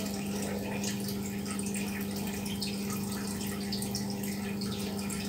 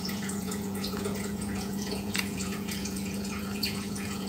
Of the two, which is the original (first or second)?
first